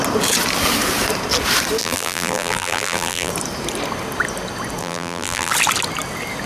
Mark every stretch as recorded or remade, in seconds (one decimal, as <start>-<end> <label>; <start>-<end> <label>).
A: 0.0-1.8 recorded; 1.8-3.3 remade; 3.3-4.8 recorded; 4.8-5.5 remade; 5.5-6.5 recorded